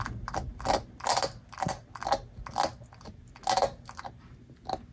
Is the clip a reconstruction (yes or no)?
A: no